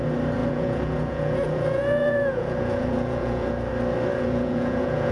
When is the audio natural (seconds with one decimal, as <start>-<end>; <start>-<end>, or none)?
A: 0.0-0.4; 3.5-4.1